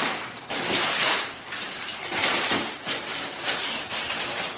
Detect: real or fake fake